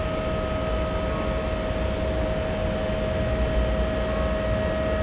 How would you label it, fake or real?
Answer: real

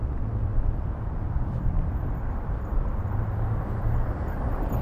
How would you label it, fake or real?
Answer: fake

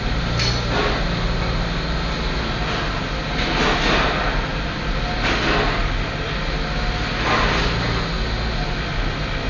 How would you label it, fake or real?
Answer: real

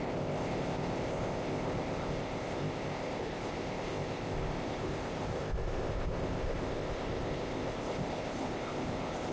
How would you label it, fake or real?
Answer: fake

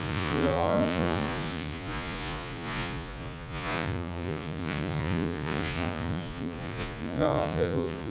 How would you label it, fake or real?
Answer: fake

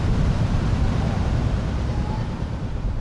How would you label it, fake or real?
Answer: fake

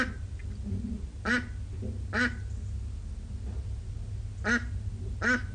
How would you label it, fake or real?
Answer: real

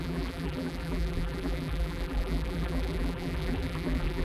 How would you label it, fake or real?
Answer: fake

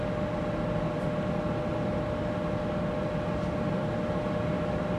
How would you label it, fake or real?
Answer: real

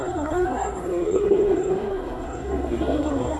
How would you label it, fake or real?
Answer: fake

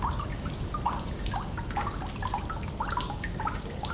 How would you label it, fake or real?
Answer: real